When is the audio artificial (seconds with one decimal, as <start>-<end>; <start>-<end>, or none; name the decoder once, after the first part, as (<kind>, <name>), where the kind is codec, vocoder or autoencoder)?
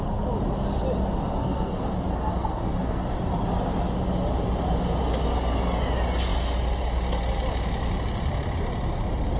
1.4-1.9 (codec, SNAC); 2.3-3.0